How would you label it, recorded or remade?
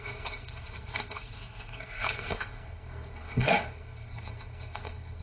remade